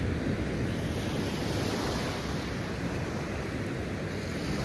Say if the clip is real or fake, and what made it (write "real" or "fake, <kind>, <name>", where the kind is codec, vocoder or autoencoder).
real